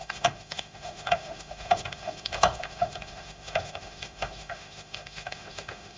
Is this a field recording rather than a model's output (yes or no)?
no